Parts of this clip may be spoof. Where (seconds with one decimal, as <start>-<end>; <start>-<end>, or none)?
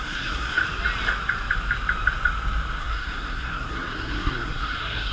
0.0-0.6; 2.8-5.1